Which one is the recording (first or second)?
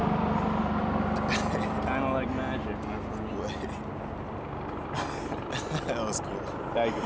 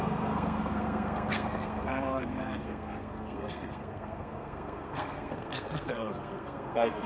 first